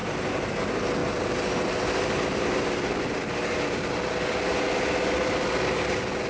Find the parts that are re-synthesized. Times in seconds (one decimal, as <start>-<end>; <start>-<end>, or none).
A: none